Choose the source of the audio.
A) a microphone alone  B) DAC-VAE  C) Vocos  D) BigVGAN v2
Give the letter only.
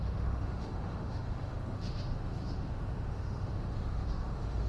B